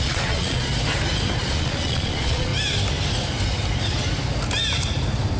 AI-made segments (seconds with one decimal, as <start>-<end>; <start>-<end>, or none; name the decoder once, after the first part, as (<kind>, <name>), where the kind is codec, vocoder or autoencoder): 0.0-0.7 (vocoder, Vocos); 1.4-2.5